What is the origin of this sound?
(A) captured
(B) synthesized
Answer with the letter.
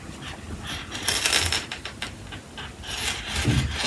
A